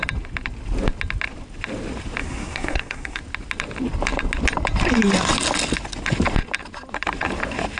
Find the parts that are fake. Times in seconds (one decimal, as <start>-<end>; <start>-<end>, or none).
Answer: 2.2-3.2